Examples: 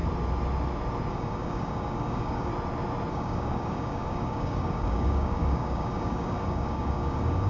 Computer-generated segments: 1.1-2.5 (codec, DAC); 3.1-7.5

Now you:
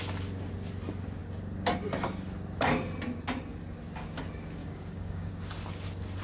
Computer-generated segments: 4.6-5.3 (codec, DAC)